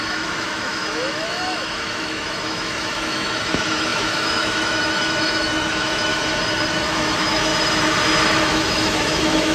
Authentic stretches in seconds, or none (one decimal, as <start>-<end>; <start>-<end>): 6.1-6.7; 7.5-8.4